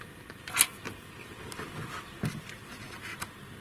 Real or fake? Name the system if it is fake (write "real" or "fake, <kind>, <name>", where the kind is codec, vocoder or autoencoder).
real